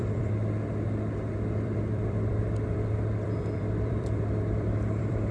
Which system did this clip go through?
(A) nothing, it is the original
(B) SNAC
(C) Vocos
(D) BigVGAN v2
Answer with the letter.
D